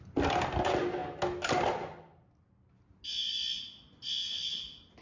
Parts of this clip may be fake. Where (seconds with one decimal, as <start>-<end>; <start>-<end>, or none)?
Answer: none